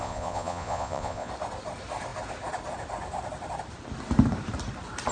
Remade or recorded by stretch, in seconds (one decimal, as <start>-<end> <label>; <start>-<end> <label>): 0.0-1.3 remade; 1.3-5.1 recorded